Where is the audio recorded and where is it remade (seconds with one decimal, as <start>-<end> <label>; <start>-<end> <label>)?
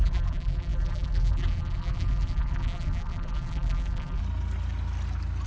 0.0-4.2 remade; 4.2-5.5 recorded